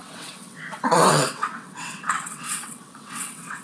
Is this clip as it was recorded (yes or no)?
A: no